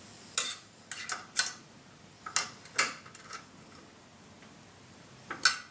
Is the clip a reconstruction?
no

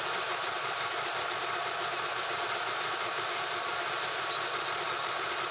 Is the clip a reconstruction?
no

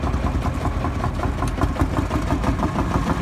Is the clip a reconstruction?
no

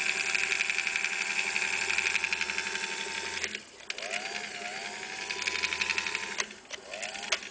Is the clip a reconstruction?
no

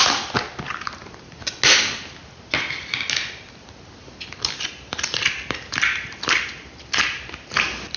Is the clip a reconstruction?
no